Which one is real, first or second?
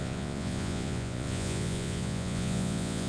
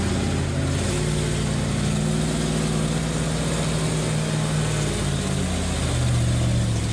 second